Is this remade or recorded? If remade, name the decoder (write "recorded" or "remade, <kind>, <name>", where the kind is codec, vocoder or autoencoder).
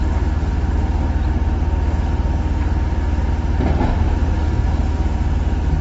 recorded